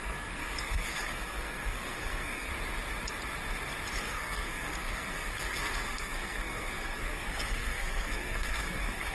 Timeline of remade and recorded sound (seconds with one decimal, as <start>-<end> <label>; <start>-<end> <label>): 0.0-2.5 remade; 2.5-4.0 recorded; 4.0-9.1 remade